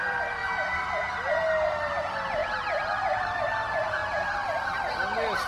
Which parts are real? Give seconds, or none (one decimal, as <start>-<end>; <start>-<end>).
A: 0.4-1.7